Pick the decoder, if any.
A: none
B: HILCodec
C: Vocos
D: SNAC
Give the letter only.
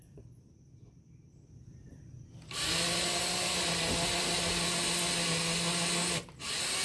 A